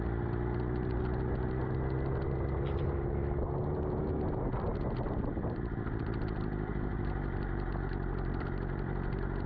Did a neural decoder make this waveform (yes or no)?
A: no